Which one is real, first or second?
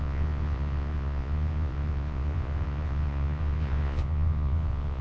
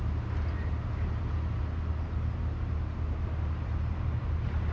second